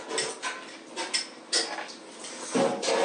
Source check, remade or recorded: recorded